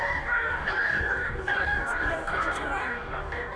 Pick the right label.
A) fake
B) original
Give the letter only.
A